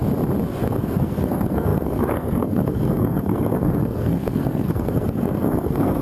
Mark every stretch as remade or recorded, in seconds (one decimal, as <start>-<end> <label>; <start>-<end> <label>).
0.0-0.8 recorded; 0.8-6.0 remade